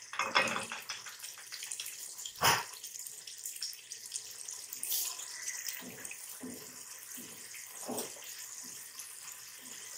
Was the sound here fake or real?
real